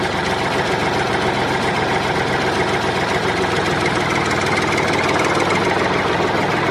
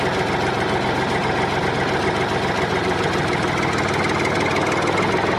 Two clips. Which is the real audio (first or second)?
second